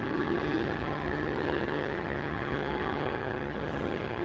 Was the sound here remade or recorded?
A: remade